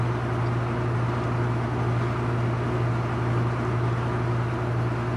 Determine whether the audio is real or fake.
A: real